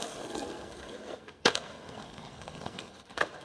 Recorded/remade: remade